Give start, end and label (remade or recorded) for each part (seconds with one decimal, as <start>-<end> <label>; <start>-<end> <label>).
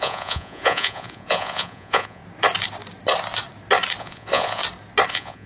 0.0-2.2 remade; 2.2-4.0 recorded; 4.0-4.6 remade; 4.6-5.1 recorded; 5.1-5.5 remade